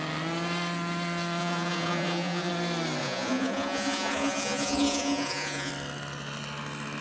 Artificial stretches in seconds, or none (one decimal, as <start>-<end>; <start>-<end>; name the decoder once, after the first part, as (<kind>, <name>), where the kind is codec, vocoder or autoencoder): 1.4-2.5 (vocoder, Vocos); 3.0-5.7